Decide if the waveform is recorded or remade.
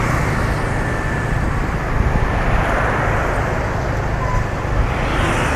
recorded